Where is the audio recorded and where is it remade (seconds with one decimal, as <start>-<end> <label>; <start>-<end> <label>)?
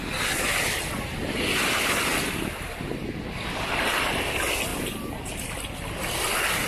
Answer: 0.0-2.1 recorded; 2.1-4.1 remade; 4.1-4.7 recorded; 4.7-5.6 remade; 5.6-6.7 recorded